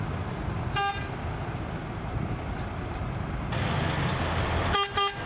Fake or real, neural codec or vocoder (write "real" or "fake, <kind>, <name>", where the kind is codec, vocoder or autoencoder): real